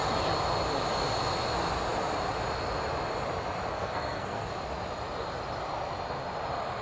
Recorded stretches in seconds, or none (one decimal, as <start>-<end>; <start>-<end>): 0.0-3.7; 4.5-6.8